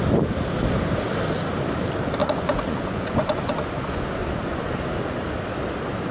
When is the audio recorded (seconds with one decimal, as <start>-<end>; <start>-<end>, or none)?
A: 0.0-2.2; 4.7-6.1